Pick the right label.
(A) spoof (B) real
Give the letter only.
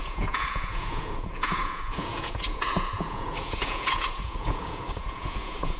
A